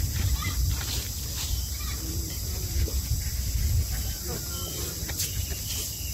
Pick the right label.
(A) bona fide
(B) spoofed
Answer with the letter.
A